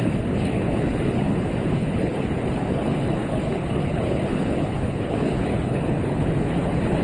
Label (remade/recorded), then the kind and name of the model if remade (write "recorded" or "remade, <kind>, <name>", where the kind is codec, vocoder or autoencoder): remade, codec, HILCodec